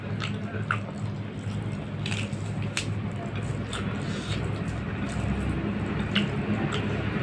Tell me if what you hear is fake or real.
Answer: real